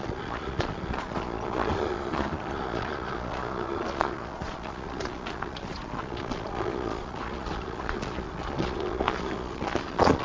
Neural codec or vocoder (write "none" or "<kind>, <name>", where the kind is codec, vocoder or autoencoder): vocoder, Vocos